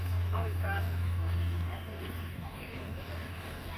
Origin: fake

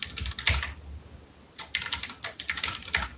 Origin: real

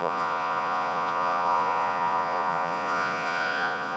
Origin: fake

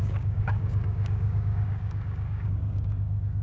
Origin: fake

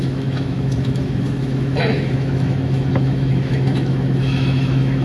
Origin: fake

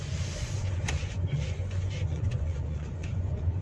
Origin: fake